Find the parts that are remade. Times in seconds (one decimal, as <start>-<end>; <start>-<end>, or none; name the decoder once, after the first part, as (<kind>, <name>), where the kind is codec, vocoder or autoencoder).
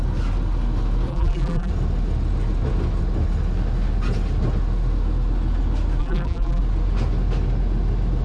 1.1-1.7 (vocoder, BigVGAN v2); 6.0-6.6